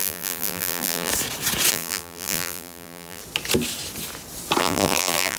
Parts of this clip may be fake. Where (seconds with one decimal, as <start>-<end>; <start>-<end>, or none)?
0.0-1.1; 1.7-3.2; 4.6-5.4